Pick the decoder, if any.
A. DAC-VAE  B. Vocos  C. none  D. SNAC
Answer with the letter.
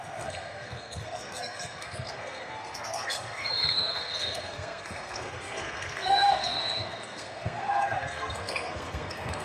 D